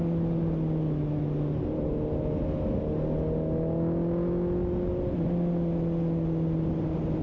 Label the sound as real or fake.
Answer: real